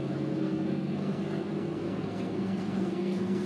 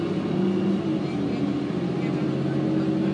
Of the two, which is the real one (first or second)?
second